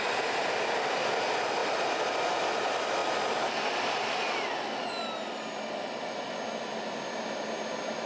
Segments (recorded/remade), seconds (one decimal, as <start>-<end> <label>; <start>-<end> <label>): 0.0-8.1 recorded